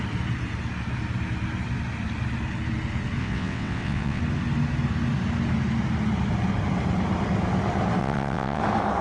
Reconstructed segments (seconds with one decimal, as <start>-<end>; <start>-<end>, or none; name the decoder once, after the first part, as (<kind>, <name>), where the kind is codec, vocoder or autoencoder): 3.2-4.2 (vocoder, WaveNeXt); 8.0-8.6